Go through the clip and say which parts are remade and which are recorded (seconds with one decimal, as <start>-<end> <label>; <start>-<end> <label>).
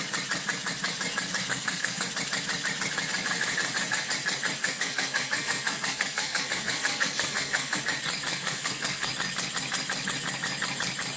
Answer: 0.0-1.4 recorded; 1.4-2.1 remade; 2.1-4.6 recorded; 4.6-7.8 remade; 7.8-8.3 recorded; 8.3-9.1 remade; 9.1-11.2 recorded